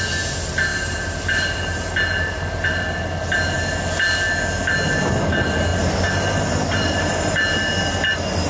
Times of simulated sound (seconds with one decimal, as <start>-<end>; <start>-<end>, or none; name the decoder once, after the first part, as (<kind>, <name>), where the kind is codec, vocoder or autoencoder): none